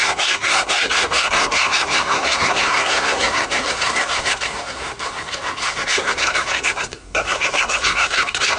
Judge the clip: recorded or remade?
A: remade